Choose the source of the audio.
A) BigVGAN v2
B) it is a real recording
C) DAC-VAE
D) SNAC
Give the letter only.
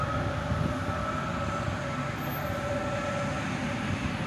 B